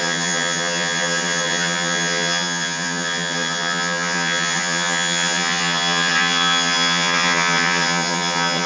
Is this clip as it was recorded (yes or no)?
no